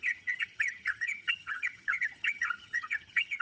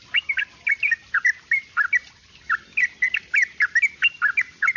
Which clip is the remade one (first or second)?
first